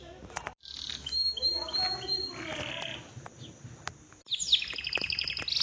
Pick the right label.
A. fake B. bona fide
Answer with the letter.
B